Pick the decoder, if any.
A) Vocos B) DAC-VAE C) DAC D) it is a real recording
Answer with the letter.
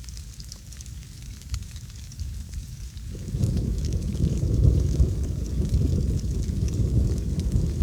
C